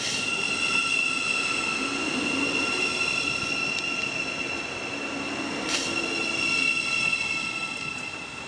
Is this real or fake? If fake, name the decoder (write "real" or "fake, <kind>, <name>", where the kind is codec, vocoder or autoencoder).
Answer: real